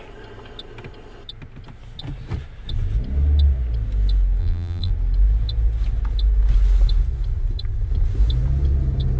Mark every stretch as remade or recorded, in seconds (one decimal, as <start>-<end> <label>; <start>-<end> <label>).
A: 0.0-4.4 recorded; 4.4-4.9 remade; 4.9-9.2 recorded